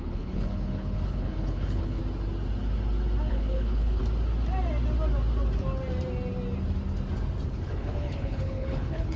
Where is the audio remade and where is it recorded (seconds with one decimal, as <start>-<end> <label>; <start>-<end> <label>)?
0.0-2.0 remade; 2.0-3.3 recorded; 3.3-4.0 remade; 4.0-7.5 recorded; 7.5-9.2 remade